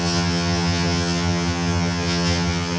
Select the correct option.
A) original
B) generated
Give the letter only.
B